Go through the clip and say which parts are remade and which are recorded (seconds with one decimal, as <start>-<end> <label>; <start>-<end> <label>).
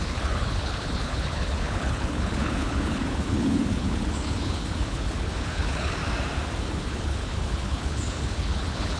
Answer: 0.0-6.0 remade; 6.0-6.6 recorded; 6.6-9.0 remade